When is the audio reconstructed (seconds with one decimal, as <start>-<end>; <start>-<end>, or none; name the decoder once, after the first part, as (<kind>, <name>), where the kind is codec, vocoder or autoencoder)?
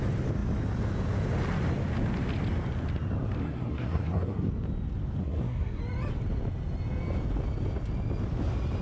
3.4-4.5 (codec, SNAC); 5.2-5.8